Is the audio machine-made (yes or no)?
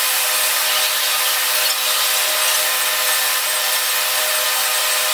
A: no